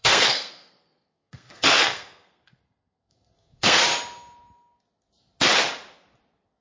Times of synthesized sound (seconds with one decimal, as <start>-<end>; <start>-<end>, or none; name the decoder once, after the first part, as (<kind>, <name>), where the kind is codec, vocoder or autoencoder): 0.0-3.9 (codec, SNAC)